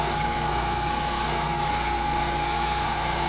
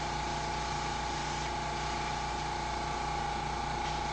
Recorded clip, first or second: second